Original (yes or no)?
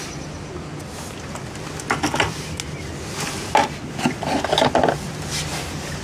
yes